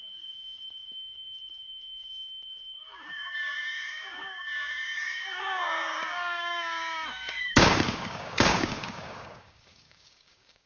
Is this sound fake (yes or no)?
yes